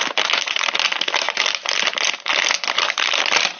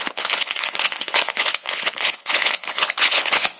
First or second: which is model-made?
second